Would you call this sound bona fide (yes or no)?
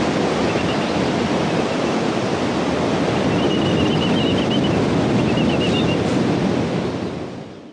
yes